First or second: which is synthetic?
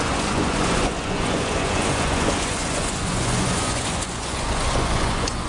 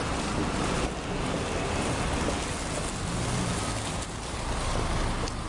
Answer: first